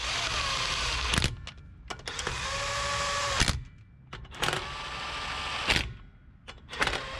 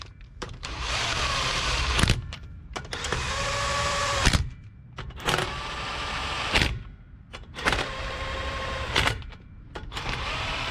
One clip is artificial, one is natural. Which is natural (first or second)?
first